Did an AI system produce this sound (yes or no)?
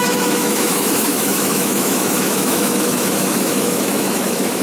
yes